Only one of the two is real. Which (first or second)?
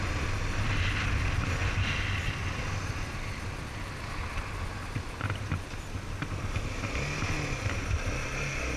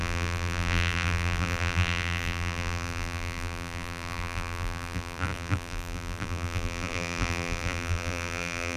first